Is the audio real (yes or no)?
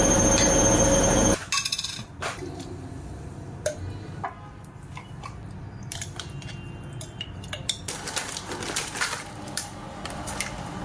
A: yes